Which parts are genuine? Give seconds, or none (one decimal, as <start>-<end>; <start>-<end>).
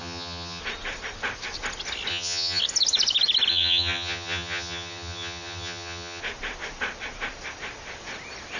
0.6-2.1; 2.6-3.5; 6.2-8.6